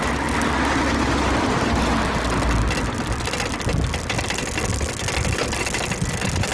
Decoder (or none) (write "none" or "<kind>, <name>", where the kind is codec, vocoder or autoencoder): none